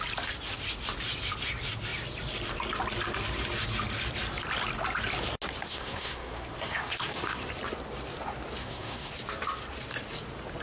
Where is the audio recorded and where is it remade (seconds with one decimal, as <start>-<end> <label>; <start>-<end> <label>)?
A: 0.0-5.7 recorded; 5.7-7.5 remade; 7.5-8.6 recorded; 8.6-9.1 remade; 9.1-10.6 recorded